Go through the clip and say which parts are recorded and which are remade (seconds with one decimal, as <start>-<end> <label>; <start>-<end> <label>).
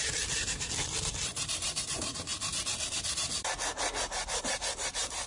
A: 0.0-2.3 remade; 2.3-4.4 recorded; 4.4-5.3 remade